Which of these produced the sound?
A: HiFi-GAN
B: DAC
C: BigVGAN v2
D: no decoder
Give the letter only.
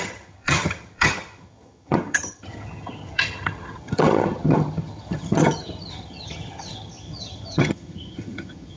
A